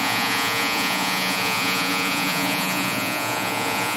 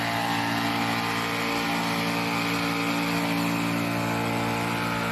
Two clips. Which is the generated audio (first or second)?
first